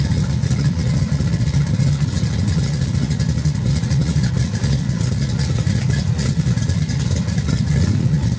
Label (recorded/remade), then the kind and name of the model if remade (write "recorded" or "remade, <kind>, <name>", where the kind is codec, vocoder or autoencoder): remade, vocoder, Vocos